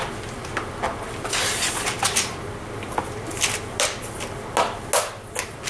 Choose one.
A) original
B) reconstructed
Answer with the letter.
A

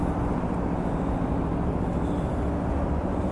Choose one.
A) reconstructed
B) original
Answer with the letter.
B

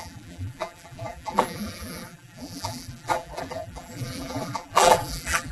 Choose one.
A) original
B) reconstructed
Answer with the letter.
B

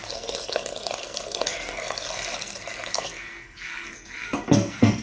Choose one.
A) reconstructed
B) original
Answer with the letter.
A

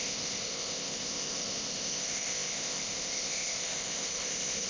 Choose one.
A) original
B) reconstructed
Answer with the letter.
B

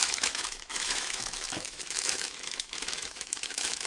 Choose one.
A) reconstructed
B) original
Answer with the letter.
A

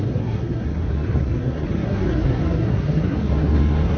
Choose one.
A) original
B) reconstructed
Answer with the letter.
B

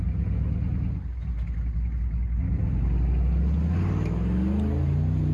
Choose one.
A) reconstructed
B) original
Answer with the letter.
B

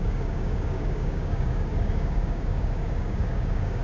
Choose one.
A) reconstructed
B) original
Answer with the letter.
A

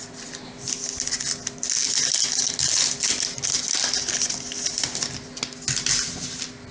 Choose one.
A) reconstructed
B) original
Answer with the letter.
B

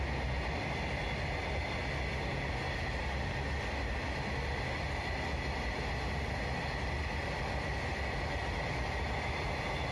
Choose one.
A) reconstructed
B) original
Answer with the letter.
B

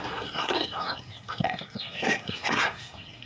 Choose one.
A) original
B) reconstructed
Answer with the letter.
B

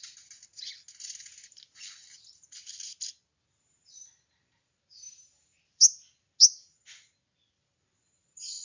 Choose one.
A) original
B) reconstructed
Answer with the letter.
A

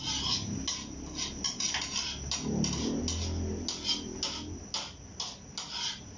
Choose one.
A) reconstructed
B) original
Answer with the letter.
B